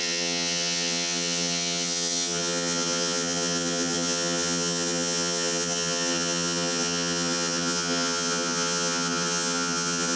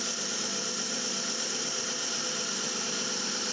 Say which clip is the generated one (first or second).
first